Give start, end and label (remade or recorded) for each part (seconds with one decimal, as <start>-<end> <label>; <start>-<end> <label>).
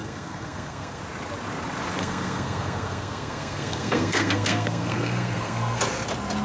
0.0-1.0 remade; 1.0-2.0 recorded; 2.0-5.8 remade; 5.8-6.4 recorded